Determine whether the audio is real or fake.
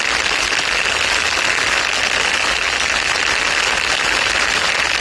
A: real